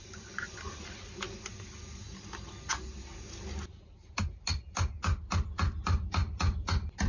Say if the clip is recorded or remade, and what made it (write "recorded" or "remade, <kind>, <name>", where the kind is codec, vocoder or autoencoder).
recorded